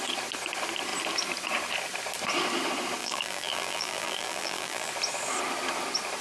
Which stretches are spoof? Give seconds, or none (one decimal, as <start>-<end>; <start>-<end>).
3.0-4.9